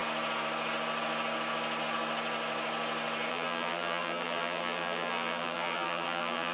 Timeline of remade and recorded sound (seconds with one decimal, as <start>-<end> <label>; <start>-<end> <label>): 0.0-3.3 recorded; 3.3-6.5 remade

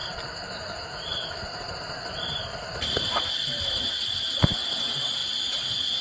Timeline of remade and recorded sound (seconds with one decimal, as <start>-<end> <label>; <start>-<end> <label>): 0.0-3.2 remade; 3.2-6.0 recorded

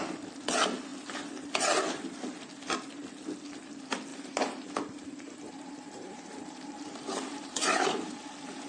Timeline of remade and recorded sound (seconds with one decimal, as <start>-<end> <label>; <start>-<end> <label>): 0.0-4.1 recorded; 4.1-8.1 remade; 8.1-8.7 recorded

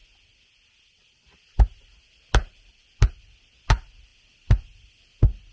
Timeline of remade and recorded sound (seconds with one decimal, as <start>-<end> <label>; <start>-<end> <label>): 0.0-5.5 recorded